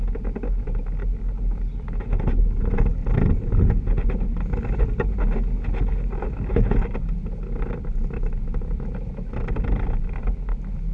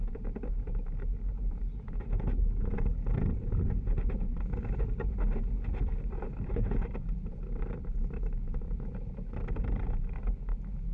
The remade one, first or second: second